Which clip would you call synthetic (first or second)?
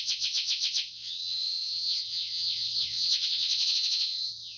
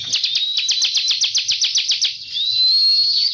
first